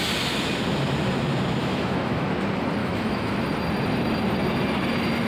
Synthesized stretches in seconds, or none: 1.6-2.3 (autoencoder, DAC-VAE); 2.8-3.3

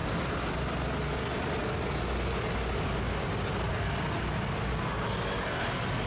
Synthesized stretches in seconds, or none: none

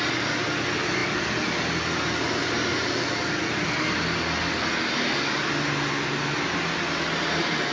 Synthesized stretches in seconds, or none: none

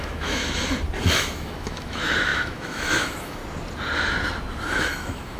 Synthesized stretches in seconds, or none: 0.0-0.4 (autoencoder, DAC-VAE); 1.1-3.4; 4.8-5.4